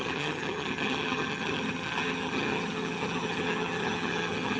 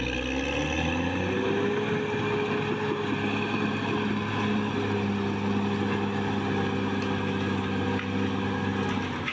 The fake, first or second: first